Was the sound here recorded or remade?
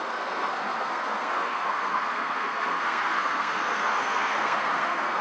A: remade